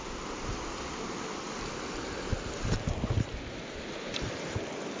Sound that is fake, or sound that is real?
real